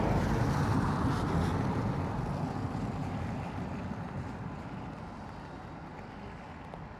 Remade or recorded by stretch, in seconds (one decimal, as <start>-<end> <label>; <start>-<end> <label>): 0.0-7.0 recorded